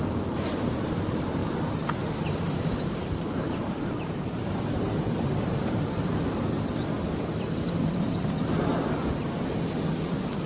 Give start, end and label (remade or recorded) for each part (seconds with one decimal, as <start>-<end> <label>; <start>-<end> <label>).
0.0-1.4 recorded; 1.4-5.8 remade; 5.8-10.5 recorded